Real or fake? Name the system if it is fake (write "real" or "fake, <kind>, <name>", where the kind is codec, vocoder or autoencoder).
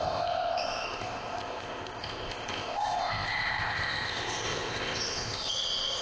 fake, codec, ZipCodec